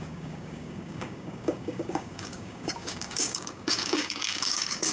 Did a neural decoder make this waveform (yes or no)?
yes